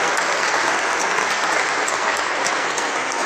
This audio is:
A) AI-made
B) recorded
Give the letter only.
A